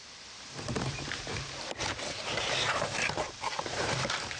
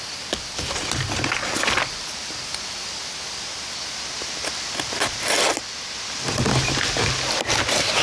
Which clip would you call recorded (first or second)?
second